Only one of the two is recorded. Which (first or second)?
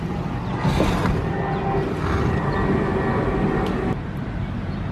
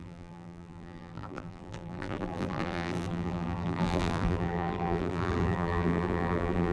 first